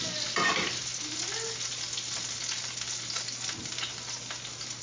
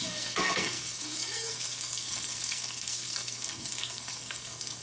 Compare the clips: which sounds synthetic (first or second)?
second